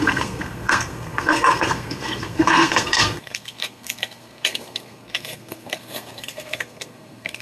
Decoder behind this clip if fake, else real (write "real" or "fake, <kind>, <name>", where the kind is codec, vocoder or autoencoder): fake, codec, SNAC